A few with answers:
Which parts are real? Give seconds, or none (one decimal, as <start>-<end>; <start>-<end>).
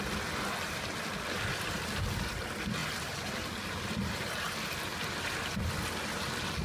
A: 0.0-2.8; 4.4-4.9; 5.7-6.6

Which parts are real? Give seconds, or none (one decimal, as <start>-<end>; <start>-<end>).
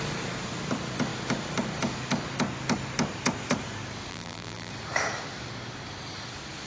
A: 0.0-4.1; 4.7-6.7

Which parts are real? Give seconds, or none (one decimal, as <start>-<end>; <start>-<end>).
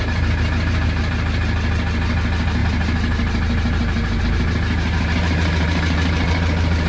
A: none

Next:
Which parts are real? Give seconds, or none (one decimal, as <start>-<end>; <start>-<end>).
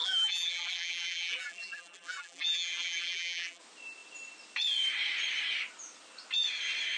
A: 3.6-7.0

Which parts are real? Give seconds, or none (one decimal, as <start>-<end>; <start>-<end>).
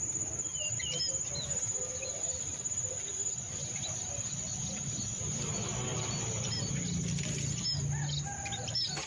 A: 0.0-5.9; 6.7-9.1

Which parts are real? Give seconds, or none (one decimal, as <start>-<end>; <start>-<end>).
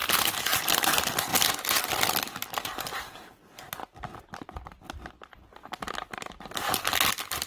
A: 0.7-5.6